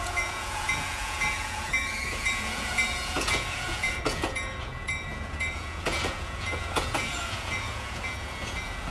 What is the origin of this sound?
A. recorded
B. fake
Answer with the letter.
B